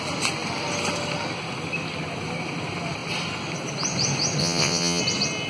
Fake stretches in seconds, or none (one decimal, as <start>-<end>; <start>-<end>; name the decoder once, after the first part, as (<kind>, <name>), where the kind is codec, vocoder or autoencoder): 4.4-5.0 (vocoder, WaveNeXt)